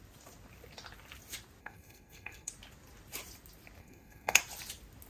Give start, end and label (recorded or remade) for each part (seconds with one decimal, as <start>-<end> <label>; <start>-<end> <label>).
0.0-1.6 recorded; 1.6-2.5 remade; 2.5-3.8 recorded; 3.8-4.4 remade; 4.4-5.1 recorded